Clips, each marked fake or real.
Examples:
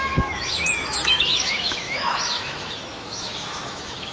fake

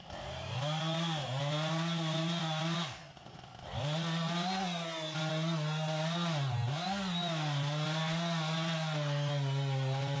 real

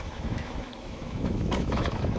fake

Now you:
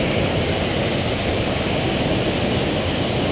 real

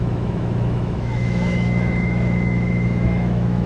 fake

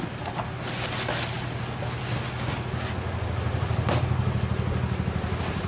real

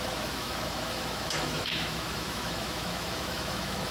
fake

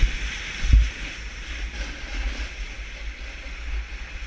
real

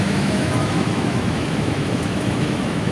fake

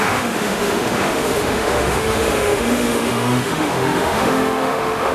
fake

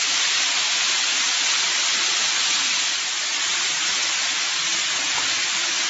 real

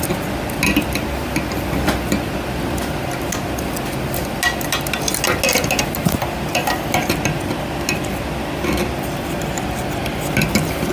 real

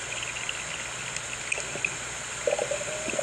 real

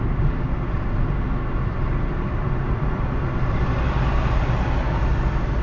real